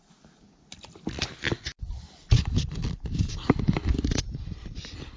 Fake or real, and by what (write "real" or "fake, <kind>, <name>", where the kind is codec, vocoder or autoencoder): real